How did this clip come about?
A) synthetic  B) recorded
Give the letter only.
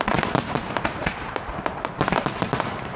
A